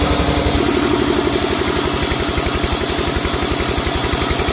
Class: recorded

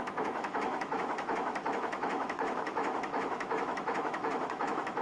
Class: remade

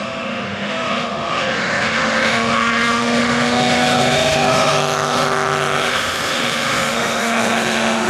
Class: remade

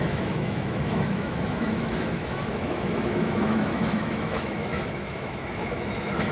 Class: remade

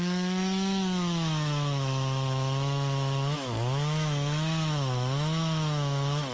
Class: remade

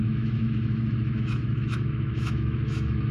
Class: remade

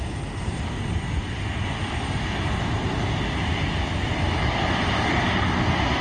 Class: recorded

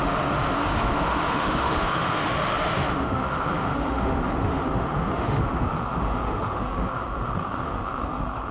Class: remade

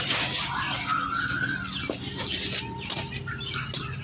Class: recorded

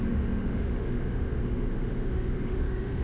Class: remade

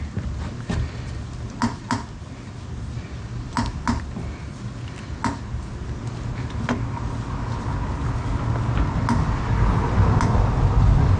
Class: recorded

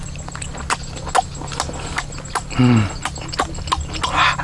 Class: recorded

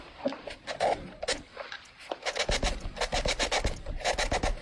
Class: recorded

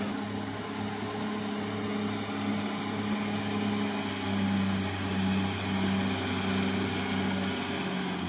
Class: recorded